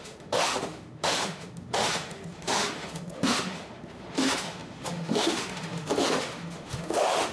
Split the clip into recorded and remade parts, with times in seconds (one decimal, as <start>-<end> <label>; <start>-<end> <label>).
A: 0.0-7.3 remade

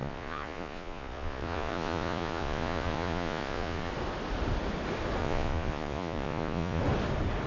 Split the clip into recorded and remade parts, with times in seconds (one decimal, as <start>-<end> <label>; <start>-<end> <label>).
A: 0.0-3.9 remade; 3.9-5.2 recorded; 5.2-6.8 remade; 6.8-7.5 recorded

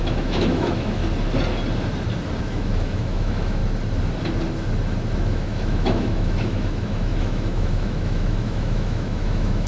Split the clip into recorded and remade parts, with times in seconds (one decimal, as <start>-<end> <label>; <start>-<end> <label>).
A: 0.0-1.0 remade; 1.0-2.4 recorded; 2.4-3.6 remade; 3.6-5.2 recorded; 5.2-9.7 remade

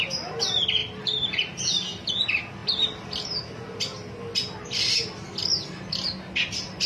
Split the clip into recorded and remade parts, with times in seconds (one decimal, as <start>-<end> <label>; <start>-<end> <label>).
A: 0.0-0.8 recorded; 0.8-2.1 remade; 2.1-6.9 recorded

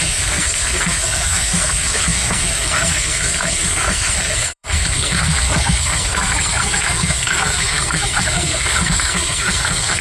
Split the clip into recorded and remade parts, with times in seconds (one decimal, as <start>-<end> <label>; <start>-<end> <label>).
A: 0.0-10.0 remade

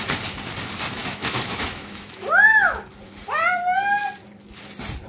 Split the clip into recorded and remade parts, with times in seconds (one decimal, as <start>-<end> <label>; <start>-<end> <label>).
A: 0.0-1.0 recorded; 1.0-2.8 remade; 2.8-5.1 recorded